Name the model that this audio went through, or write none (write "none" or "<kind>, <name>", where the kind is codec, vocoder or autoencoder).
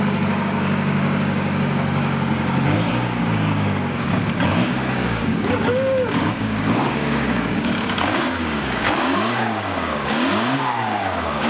codec, DAC